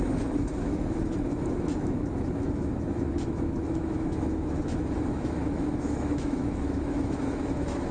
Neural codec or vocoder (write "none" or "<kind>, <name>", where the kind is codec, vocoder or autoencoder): autoencoder, DAC-VAE